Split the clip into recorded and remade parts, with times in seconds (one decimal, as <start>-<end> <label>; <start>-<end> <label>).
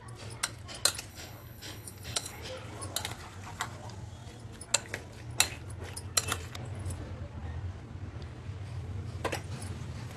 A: 0.0-1.1 recorded; 1.1-2.4 remade; 2.4-10.2 recorded